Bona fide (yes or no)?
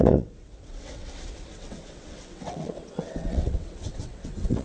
no